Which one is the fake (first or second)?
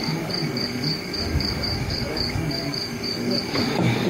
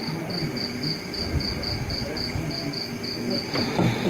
first